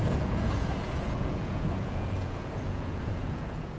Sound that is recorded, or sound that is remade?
remade